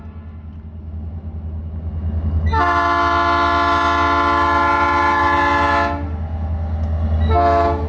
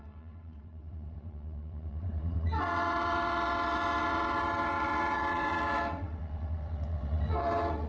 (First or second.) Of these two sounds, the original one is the first